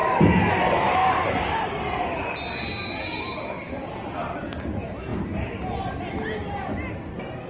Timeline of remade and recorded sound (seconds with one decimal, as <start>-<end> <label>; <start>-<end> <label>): 0.0-1.0 recorded; 1.0-1.8 remade; 1.8-7.5 recorded

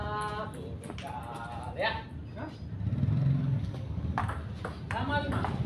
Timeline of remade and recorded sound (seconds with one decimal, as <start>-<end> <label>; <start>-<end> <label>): 0.0-3.4 recorded; 3.4-4.2 remade; 4.2-5.7 recorded

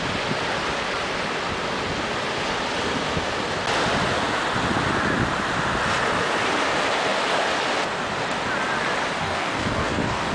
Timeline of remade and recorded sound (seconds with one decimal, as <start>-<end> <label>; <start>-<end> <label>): 0.0-9.2 recorded; 9.2-10.3 remade

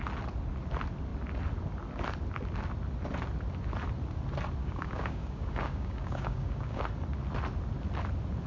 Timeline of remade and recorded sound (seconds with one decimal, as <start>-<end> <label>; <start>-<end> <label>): 0.0-4.6 recorded; 4.6-6.8 remade; 6.8-8.5 recorded

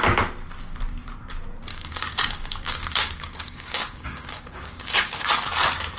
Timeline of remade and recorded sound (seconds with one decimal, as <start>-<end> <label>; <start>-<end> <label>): 0.0-1.7 recorded; 1.7-5.3 remade; 5.3-6.0 recorded